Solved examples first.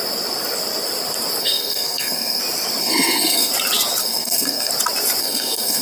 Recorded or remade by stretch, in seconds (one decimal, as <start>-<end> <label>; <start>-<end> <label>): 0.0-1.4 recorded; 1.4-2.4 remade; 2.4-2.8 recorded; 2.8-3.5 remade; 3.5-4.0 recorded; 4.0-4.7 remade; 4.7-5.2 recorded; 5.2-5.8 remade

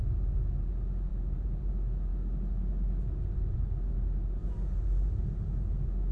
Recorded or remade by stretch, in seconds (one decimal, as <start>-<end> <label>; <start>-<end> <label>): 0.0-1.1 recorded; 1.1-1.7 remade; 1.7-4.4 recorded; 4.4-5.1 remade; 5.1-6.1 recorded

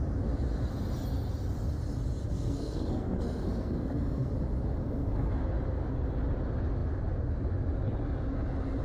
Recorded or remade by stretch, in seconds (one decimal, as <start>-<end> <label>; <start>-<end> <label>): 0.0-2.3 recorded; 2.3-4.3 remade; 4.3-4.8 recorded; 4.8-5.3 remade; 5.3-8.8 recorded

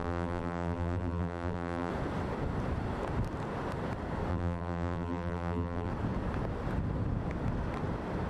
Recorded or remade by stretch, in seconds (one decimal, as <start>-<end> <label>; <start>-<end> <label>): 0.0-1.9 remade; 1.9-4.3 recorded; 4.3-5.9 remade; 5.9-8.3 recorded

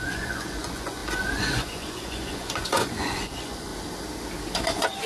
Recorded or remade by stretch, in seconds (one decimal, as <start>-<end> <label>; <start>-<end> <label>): 0.0-3.7 remade; 3.7-4.6 recorded; 4.6-5.1 remade

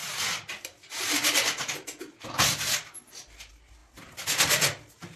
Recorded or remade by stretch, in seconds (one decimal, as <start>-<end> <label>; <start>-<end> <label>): 0.0-5.2 recorded